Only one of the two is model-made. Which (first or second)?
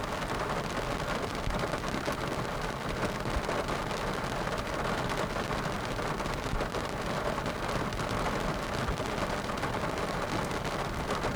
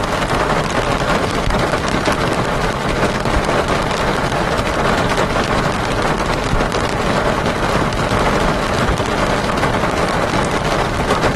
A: second